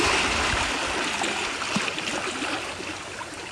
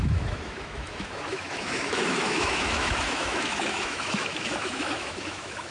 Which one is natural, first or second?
first